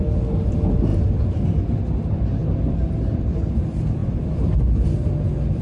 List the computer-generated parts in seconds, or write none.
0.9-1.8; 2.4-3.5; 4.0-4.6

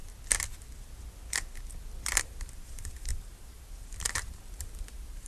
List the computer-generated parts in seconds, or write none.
2.2-5.3

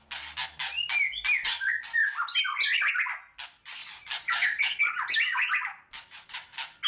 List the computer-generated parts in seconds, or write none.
none

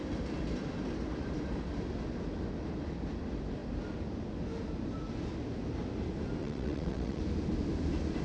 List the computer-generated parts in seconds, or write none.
6.4-7.2

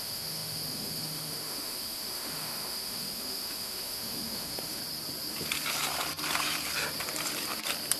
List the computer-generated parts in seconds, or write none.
0.0-4.8

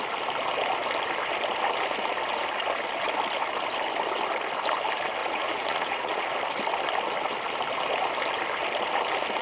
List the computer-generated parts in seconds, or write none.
5.2-6.4

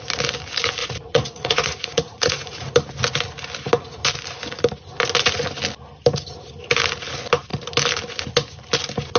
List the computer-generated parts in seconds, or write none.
0.8-2.7

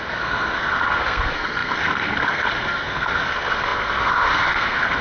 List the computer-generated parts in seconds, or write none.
0.0-5.0